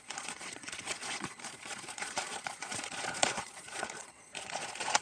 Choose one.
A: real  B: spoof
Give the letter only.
B